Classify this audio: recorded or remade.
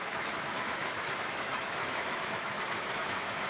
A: remade